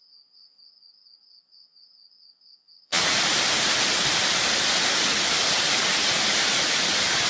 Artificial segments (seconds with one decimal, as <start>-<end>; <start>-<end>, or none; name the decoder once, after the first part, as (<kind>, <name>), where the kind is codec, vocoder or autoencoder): 0.0-3.0 (vocoder, Vocos)